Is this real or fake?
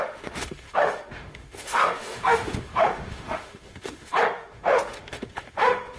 fake